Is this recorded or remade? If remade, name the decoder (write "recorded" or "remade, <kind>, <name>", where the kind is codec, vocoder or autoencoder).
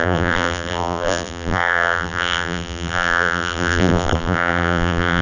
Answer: remade, vocoder, BigVGAN v2